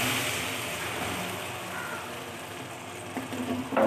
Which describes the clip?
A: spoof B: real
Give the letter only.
B